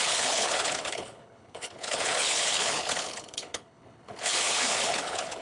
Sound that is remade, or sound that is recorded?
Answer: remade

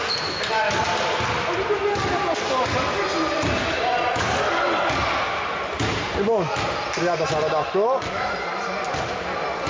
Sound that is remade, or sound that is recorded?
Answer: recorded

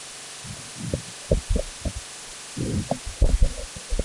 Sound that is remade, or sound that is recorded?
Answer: recorded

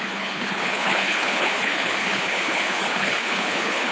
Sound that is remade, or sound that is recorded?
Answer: remade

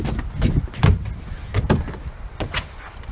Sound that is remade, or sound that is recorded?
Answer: recorded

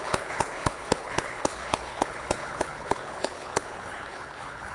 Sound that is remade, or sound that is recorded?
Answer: remade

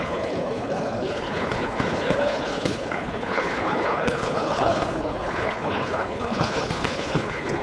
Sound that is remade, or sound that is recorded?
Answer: remade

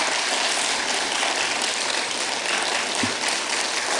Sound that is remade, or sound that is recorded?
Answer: recorded